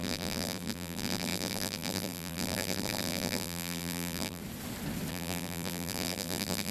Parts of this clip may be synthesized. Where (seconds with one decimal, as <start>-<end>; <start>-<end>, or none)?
0.0-4.4; 5.1-6.7